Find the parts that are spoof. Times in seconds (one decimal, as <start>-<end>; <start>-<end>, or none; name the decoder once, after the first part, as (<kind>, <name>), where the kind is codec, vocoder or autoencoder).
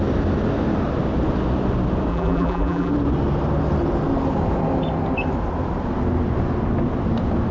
2.1-2.9 (vocoder, BigVGAN v2)